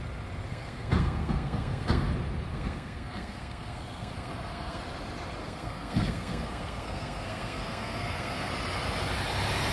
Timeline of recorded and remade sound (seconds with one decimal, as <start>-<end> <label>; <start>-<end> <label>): 0.0-0.5 recorded; 0.5-2.1 remade; 2.1-2.5 recorded; 2.5-4.8 remade; 4.8-5.4 recorded; 5.4-8.5 remade; 8.5-9.7 recorded